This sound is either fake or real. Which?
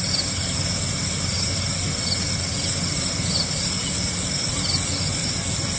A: real